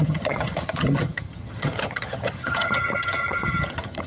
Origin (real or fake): fake